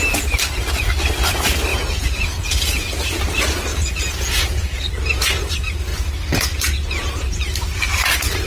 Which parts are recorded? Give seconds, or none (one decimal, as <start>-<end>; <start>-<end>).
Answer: 0.0-1.7; 3.2-3.7; 4.9-8.5